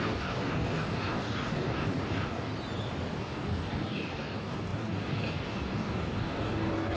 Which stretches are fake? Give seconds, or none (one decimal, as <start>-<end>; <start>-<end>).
0.0-2.5; 3.2-7.0